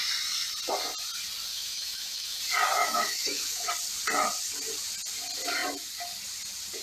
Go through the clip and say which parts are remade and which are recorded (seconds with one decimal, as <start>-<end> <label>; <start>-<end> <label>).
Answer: 0.0-1.5 recorded; 1.5-2.4 remade; 2.4-2.8 recorded; 2.8-3.7 remade; 3.7-6.8 recorded